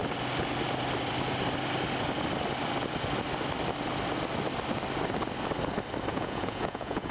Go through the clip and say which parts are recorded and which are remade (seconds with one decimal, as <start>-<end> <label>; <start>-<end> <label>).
0.0-6.1 recorded; 6.1-7.1 remade